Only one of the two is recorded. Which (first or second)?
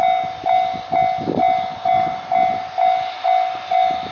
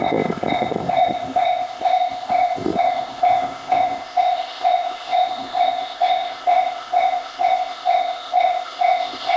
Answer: first